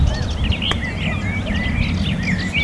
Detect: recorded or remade recorded